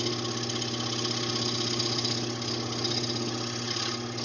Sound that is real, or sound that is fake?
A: real